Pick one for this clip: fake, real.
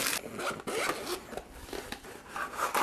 real